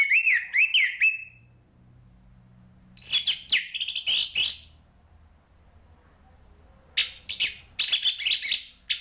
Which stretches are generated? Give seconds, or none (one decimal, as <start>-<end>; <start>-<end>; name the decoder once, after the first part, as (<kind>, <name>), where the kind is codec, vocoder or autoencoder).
none